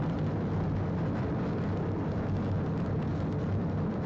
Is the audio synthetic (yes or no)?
no